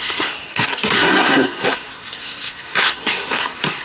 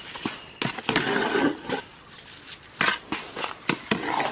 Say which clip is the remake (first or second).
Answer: first